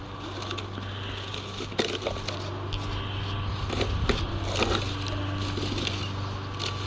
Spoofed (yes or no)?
no